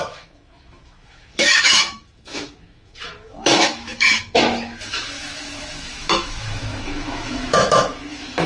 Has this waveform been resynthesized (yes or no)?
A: yes